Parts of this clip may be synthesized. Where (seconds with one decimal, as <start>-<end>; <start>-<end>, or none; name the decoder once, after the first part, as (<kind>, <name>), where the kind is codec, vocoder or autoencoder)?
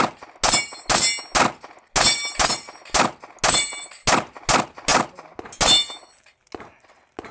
none